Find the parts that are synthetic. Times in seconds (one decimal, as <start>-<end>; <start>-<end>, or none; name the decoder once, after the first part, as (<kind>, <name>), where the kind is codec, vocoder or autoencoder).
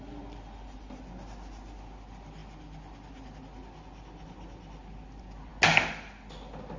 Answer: none